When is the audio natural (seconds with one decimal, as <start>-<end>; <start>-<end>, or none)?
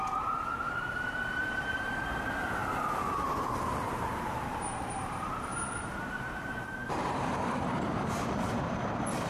2.6-3.5